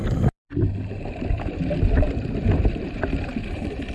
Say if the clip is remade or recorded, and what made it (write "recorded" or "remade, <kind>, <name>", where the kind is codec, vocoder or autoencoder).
remade, vocoder, BigVGAN v2